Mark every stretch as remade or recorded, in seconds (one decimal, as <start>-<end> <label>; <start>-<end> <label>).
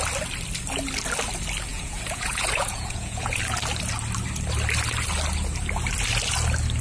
0.0-1.7 recorded; 1.7-3.4 remade; 3.4-6.8 recorded